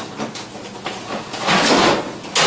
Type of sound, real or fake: real